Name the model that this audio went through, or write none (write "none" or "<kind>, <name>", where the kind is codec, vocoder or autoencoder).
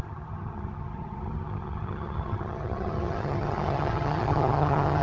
vocoder, HiFi-GAN